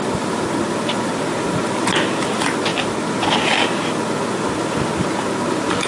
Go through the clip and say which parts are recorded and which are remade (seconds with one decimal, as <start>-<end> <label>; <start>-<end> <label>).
0.0-5.9 recorded

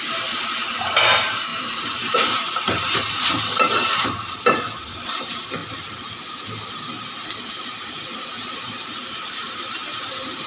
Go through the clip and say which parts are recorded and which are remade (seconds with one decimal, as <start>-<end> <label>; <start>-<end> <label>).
0.0-5.6 remade; 5.6-7.5 recorded; 7.5-10.5 remade

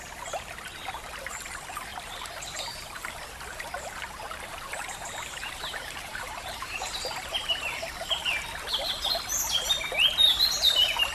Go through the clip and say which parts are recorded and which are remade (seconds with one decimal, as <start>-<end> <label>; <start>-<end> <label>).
0.0-1.9 recorded; 1.9-2.9 remade; 2.9-4.5 recorded; 4.5-8.2 remade; 8.2-10.3 recorded; 10.3-11.1 remade

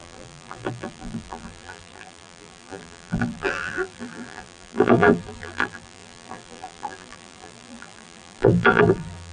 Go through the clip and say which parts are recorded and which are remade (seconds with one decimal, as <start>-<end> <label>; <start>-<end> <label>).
0.0-9.3 remade

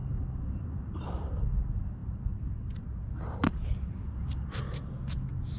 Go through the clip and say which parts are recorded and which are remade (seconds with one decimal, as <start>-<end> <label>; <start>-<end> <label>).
0.0-5.6 recorded

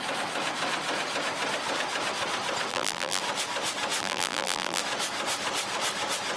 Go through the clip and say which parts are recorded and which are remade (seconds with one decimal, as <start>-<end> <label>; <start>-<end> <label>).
0.0-2.7 recorded; 2.7-3.2 remade; 3.2-4.0 recorded; 4.0-4.8 remade; 4.8-6.4 recorded

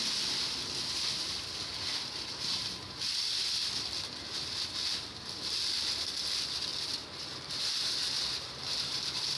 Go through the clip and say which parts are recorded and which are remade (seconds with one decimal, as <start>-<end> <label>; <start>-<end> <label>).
0.0-1.9 recorded; 1.9-3.4 remade; 3.4-6.7 recorded; 6.7-9.4 remade